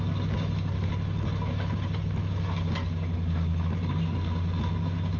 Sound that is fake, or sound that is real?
real